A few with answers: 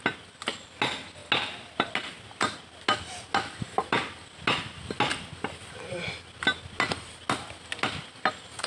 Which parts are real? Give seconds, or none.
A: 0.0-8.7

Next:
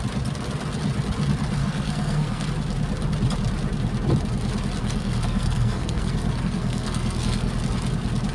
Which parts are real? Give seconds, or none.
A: 0.0-1.6; 2.5-4.8; 7.5-8.3

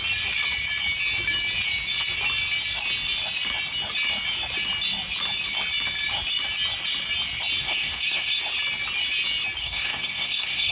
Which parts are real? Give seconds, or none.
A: 0.0-7.6; 8.4-9.6

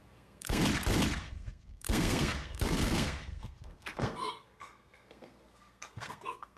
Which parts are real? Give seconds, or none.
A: 0.6-1.2

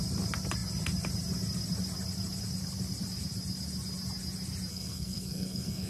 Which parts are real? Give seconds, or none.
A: 0.0-4.7

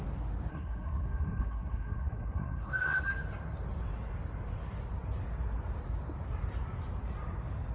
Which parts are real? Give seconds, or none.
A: 0.0-0.5; 3.0-7.7

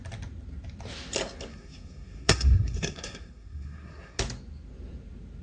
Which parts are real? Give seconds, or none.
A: 0.0-1.5; 4.2-5.4